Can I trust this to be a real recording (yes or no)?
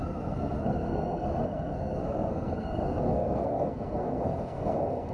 no